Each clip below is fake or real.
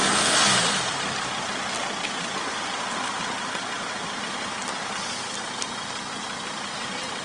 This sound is real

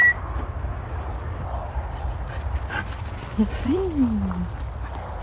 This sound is real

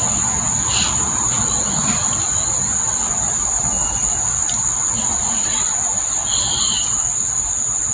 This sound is real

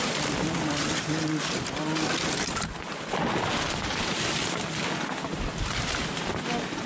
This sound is real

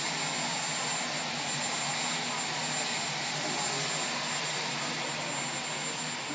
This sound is real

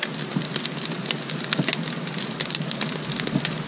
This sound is real